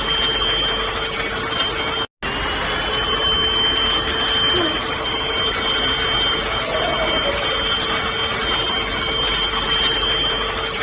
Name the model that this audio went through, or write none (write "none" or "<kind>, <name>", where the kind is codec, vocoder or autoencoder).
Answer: none